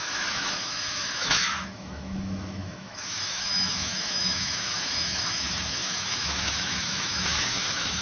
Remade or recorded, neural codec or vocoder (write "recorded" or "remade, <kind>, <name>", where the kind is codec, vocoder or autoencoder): remade, autoencoder, DAC-VAE